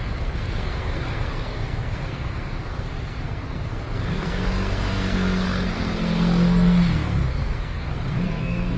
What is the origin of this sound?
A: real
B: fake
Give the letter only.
B